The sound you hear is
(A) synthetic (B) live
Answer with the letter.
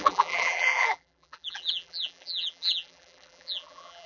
A